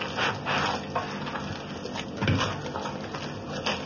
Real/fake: real